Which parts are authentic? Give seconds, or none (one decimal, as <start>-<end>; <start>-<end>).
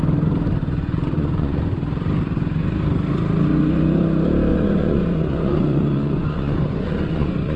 0.0-0.8; 1.6-4.5